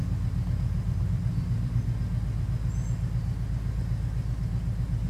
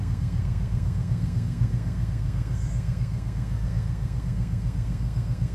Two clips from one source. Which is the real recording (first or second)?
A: first